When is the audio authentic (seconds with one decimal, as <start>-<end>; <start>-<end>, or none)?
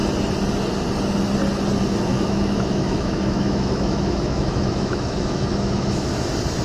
0.0-2.1; 6.1-6.6